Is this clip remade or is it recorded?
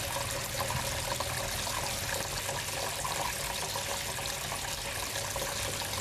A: recorded